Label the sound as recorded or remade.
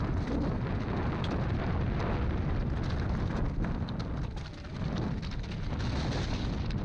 recorded